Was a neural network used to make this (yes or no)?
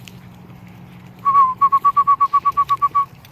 no